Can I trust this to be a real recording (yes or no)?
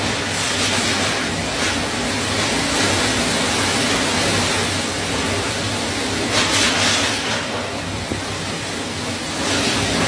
yes